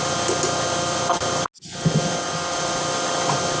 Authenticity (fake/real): real